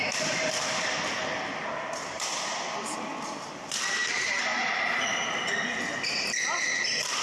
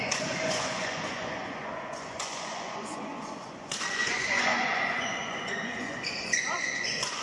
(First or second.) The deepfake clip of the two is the second